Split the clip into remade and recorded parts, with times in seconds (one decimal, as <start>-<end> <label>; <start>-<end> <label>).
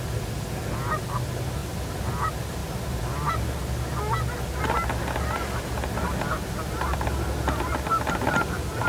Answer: 0.0-8.9 recorded